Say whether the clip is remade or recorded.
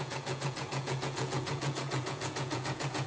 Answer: remade